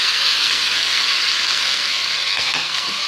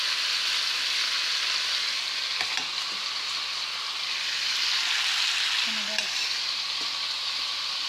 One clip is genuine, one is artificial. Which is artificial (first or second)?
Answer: first